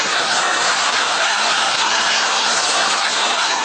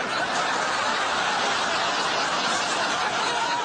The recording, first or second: second